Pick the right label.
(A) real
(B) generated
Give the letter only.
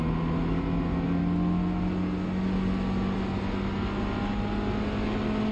A